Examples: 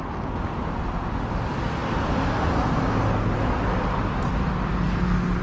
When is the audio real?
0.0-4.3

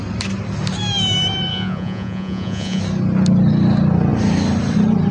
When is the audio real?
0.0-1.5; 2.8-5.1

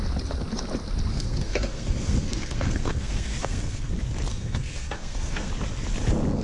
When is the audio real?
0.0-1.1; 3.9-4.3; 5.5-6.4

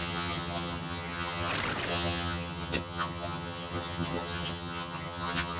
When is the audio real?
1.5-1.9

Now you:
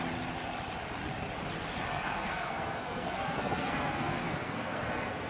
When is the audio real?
0.0-1.9